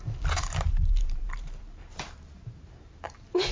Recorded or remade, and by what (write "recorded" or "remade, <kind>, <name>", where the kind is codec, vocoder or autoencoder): remade, vocoder, BigVGAN v2